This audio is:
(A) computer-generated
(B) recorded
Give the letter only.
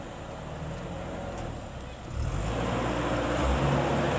B